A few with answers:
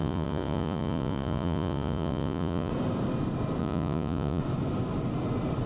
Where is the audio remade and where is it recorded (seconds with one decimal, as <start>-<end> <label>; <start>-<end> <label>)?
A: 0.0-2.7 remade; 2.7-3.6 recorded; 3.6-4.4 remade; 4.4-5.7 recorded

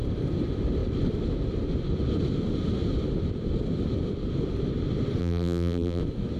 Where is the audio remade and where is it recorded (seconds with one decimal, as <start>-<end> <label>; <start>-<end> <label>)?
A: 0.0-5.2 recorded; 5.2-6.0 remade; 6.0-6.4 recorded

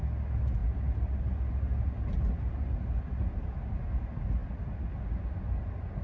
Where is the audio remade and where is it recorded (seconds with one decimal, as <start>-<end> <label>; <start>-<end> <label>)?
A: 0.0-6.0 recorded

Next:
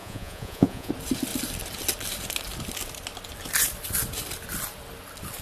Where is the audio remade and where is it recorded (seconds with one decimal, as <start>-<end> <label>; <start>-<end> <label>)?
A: 0.0-0.9 remade; 0.9-5.4 recorded

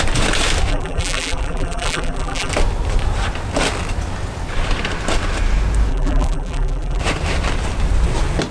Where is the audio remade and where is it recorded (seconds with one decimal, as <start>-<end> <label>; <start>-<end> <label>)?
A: 0.0-0.7 recorded; 0.7-2.5 remade; 2.5-5.9 recorded; 5.9-7.0 remade; 7.0-8.5 recorded

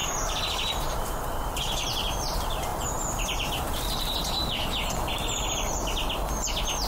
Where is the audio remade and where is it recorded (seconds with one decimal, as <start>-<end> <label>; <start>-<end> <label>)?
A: 0.0-1.6 remade; 1.6-2.7 recorded; 2.7-5.1 remade; 5.1-6.9 recorded

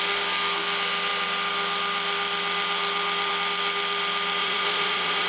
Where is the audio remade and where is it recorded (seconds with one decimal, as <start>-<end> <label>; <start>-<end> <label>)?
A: 0.0-4.4 recorded; 4.4-5.3 remade